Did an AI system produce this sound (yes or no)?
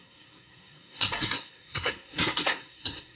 yes